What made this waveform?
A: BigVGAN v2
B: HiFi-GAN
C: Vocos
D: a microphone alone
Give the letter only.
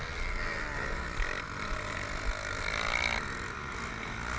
D